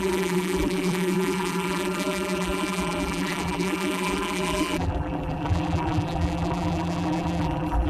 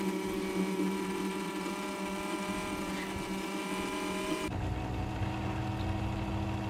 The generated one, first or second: first